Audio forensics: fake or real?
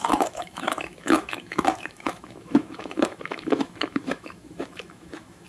fake